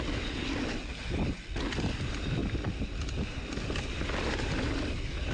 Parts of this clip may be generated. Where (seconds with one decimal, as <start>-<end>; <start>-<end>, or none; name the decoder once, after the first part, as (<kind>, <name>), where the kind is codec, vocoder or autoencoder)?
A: none